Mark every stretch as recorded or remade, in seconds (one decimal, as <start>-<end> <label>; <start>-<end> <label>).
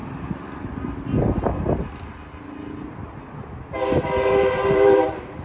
0.0-1.5 remade; 1.5-4.7 recorded; 4.7-5.4 remade